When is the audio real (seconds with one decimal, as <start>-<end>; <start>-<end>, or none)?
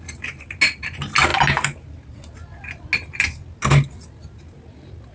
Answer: 0.0-5.1